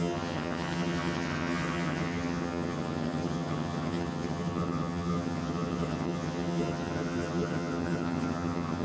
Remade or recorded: remade